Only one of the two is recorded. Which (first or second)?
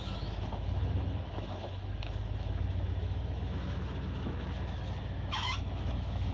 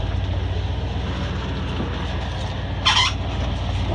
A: second